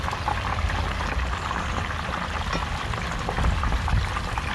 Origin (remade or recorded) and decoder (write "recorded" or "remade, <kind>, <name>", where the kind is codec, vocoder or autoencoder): recorded